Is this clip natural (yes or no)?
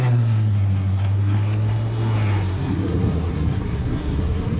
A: no